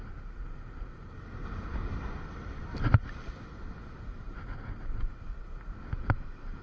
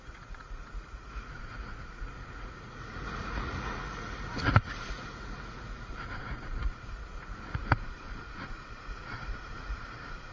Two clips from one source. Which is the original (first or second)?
first